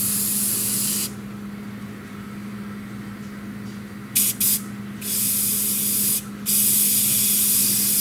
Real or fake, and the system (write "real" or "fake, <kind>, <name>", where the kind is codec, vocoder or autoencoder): real